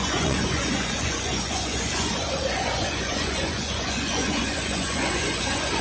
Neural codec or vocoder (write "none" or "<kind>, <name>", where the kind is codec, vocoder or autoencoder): vocoder, Vocos